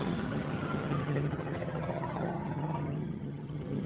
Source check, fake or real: fake